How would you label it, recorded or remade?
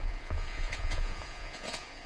remade